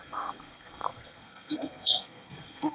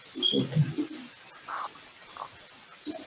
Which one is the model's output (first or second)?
first